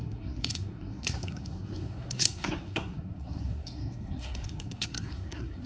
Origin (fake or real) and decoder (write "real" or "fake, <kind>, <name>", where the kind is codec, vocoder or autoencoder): fake, codec, SNAC